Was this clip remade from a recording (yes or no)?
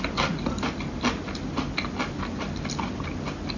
no